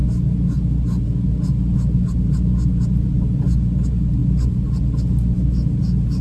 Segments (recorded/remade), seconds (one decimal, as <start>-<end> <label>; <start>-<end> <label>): 0.0-6.2 recorded